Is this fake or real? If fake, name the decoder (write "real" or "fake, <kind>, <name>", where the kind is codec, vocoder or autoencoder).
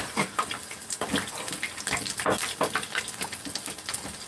real